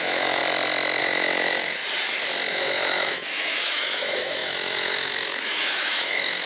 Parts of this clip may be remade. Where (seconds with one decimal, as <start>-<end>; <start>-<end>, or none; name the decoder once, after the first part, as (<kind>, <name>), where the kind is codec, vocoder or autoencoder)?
0.0-0.4 (autoencoder, DAC-VAE); 1.0-1.8; 2.5-6.5